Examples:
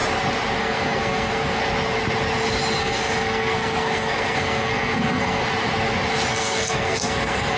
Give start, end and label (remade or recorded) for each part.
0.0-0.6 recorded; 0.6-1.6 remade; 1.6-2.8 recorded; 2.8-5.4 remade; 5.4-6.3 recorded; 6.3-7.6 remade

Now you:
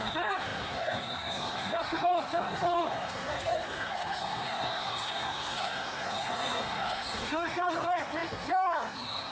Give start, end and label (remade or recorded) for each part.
0.0-9.3 remade

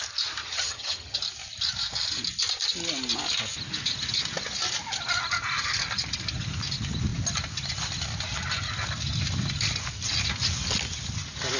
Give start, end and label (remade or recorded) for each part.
0.0-0.4 recorded; 0.4-1.2 remade; 1.2-11.6 recorded

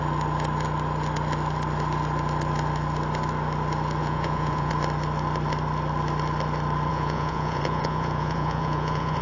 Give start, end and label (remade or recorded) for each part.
0.0-4.0 recorded; 4.0-4.7 remade; 4.7-6.9 recorded; 6.9-9.2 remade